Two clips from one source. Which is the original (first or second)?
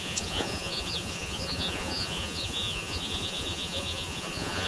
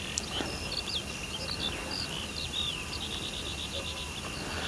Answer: second